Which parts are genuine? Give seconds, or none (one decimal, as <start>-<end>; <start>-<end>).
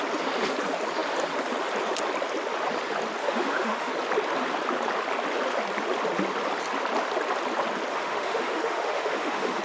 0.0-3.2; 3.9-7.9